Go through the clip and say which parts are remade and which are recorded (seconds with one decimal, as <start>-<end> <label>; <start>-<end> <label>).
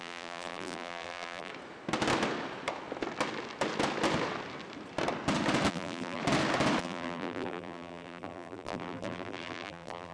0.0-1.5 remade; 1.5-5.7 recorded; 5.7-6.2 remade; 6.2-6.8 recorded; 6.8-10.1 remade